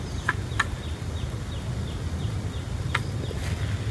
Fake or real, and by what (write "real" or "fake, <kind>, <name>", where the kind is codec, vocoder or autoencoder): real